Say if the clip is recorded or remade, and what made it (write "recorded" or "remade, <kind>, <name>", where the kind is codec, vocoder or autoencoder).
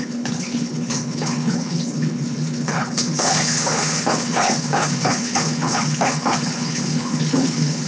remade, codec, HILCodec